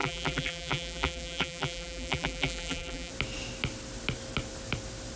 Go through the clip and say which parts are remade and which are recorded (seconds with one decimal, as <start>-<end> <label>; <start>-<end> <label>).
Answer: 0.0-3.1 remade; 3.1-5.2 recorded